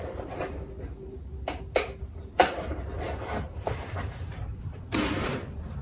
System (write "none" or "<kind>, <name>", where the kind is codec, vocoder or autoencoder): vocoder, BigVGAN v2